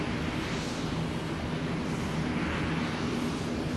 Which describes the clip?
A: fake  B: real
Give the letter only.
B